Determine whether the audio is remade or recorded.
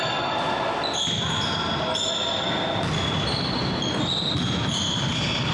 recorded